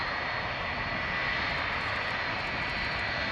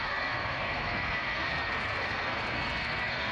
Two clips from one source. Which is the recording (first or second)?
first